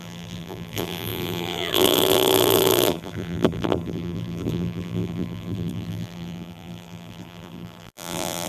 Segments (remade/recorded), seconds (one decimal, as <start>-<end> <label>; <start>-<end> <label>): 0.0-8.5 remade